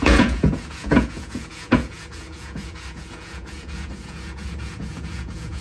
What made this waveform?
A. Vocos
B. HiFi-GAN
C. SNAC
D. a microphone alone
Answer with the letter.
A